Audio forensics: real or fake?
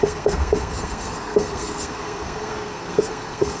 fake